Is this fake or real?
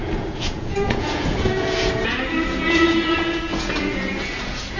fake